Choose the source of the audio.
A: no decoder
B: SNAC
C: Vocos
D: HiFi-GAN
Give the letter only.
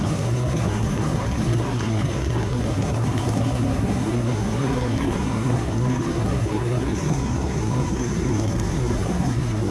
B